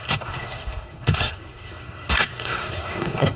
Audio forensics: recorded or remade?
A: remade